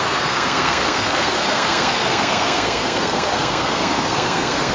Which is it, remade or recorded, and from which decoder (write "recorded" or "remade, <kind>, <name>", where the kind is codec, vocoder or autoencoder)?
remade, codec, SNAC